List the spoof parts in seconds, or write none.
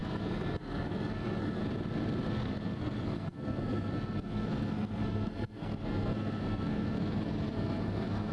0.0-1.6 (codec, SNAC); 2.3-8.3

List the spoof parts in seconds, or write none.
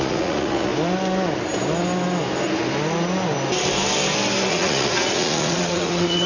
0.0-0.7 (vocoder, Vocos); 4.5-6.3